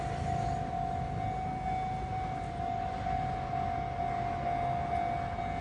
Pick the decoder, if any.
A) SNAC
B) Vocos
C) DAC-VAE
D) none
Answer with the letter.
D